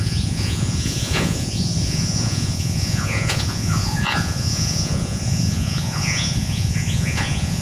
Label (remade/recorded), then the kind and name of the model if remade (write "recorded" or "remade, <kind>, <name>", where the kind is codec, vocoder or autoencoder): remade, vocoder, Vocos